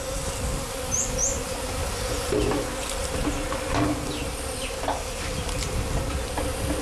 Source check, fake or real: real